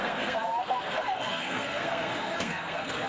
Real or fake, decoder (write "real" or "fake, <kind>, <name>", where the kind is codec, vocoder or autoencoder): fake, codec, SNAC